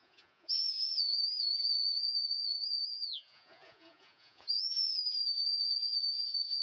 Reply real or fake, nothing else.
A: fake